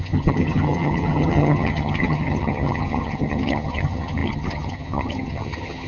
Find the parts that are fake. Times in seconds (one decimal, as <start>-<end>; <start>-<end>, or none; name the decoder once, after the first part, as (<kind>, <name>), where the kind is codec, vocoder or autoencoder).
0.0-5.9 (vocoder, HiFi-GAN)